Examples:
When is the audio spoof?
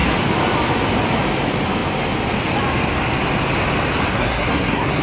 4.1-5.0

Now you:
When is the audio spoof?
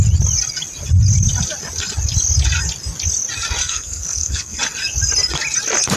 3.6-4.6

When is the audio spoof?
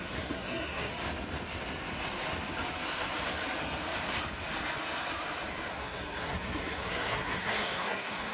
0.0-0.9; 5.7-8.3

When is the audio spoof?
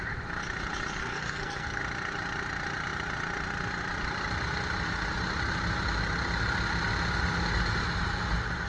1.0-1.8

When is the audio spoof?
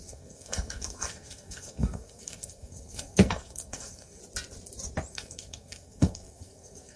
0.0-4.2; 5.1-7.0